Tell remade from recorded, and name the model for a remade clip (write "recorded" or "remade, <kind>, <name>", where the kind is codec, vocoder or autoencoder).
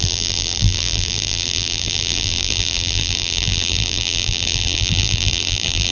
remade, vocoder, BigVGAN v2